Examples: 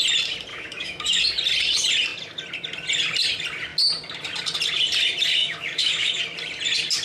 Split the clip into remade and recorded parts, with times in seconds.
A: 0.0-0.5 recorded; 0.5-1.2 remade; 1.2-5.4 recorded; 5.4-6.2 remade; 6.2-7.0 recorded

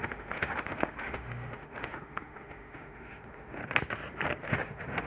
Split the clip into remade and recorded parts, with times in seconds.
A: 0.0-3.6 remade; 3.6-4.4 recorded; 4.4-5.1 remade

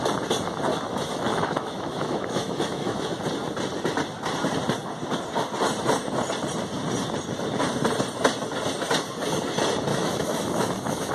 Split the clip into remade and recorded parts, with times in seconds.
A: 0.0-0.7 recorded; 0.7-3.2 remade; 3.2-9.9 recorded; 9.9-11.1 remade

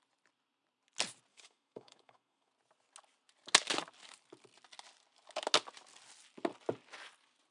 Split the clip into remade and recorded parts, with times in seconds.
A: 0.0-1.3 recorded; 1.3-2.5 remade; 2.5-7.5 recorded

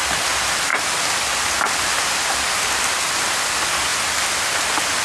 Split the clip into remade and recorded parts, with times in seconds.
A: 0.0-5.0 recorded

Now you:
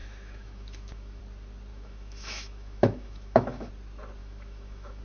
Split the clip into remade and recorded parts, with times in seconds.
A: 0.0-1.2 remade; 1.2-1.7 recorded; 1.7-3.7 remade; 3.7-4.2 recorded; 4.2-5.0 remade

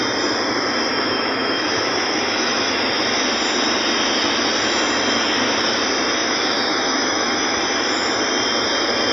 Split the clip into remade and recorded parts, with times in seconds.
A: 0.0-0.9 recorded; 0.9-3.0 remade; 3.0-6.2 recorded; 6.2-7.6 remade; 7.6-9.1 recorded